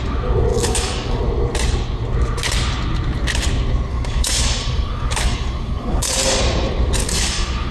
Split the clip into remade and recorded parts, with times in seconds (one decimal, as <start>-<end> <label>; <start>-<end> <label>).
0.0-0.5 recorded; 0.5-1.2 remade; 1.2-3.9 recorded; 3.9-6.4 remade; 6.4-7.0 recorded; 7.0-7.7 remade